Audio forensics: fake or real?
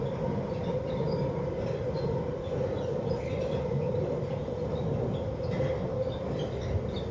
real